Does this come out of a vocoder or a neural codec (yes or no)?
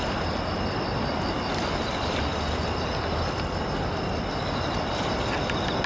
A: no